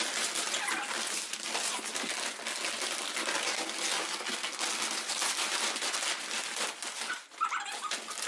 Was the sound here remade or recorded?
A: recorded